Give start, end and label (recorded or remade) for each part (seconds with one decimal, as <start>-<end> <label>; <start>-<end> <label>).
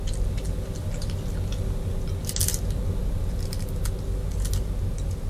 0.0-5.3 recorded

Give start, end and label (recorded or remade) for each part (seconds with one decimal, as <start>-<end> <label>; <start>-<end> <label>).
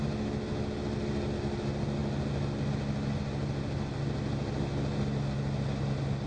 0.0-6.3 recorded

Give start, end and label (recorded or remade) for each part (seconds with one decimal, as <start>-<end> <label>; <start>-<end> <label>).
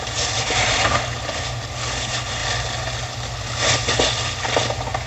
0.0-5.1 recorded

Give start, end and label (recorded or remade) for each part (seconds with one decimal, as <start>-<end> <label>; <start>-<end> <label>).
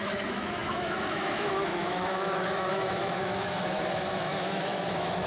0.0-5.3 remade